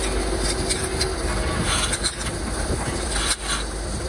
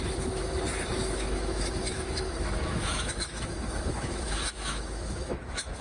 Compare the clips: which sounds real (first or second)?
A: first